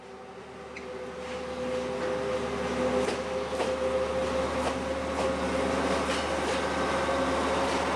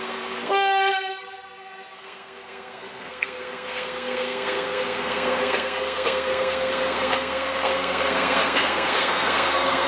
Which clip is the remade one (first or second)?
second